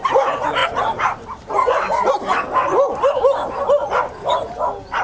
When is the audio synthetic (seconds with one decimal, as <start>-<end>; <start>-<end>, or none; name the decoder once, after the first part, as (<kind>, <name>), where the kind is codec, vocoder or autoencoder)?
0.6-2.1 (vocoder, BigVGAN v2)